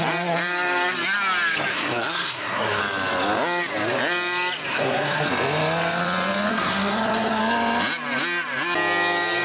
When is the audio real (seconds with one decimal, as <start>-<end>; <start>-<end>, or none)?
0.0-1.7; 2.8-4.7; 5.3-6.5; 7.4-9.4